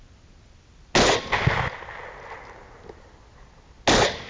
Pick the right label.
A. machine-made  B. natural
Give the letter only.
B